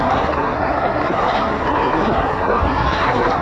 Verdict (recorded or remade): remade